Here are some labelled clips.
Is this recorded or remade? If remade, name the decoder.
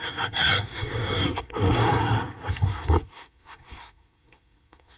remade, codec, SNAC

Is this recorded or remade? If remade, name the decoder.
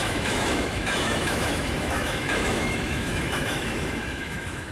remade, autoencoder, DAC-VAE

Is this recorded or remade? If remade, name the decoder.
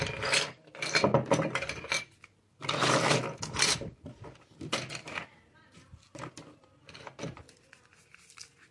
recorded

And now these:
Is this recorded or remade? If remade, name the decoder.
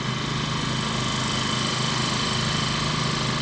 recorded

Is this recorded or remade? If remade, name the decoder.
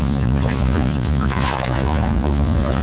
remade, vocoder, Vocos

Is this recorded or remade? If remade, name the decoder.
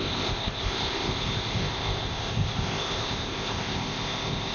remade, codec, ZipCodec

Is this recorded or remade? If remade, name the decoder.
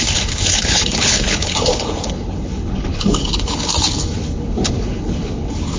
remade, codec, HILCodec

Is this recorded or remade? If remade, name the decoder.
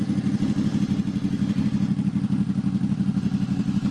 recorded